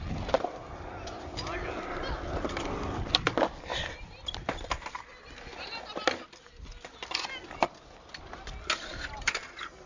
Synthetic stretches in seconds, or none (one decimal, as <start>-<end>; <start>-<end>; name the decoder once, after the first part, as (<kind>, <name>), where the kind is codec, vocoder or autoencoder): none